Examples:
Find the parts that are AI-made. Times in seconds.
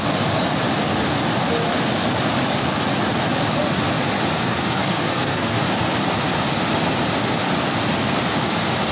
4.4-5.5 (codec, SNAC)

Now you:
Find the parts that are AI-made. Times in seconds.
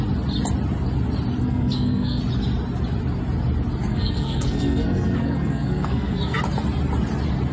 1.4-2.2 (codec, SNAC); 3.9-6.4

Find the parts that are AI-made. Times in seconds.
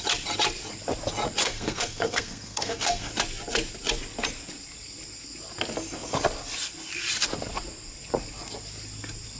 1.4-3.1 (codec, SNAC)